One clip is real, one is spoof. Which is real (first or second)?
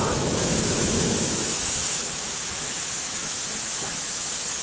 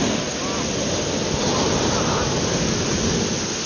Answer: second